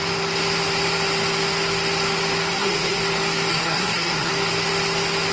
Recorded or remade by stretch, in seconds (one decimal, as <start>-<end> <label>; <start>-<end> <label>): 0.0-2.5 recorded; 2.5-3.0 remade; 3.0-3.5 recorded; 3.5-4.3 remade; 4.3-5.3 recorded